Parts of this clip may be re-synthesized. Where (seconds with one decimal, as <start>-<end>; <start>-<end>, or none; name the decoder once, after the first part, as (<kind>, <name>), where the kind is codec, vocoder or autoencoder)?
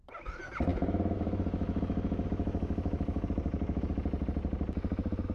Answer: 0.7-3.9 (autoencoder, DAC-VAE)